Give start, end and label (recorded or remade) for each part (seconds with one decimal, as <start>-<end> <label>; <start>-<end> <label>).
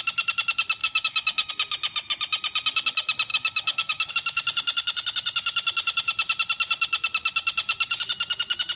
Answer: 0.0-0.8 recorded; 0.8-1.5 remade; 1.5-3.3 recorded; 3.3-4.1 remade; 4.1-8.8 recorded